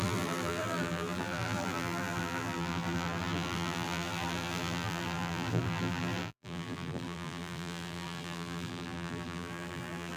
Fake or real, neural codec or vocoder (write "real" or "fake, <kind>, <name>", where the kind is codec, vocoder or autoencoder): fake, vocoder, BigVGAN v2